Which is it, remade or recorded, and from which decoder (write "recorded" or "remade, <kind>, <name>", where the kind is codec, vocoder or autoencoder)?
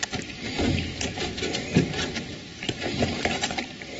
remade, vocoder, BigVGAN v2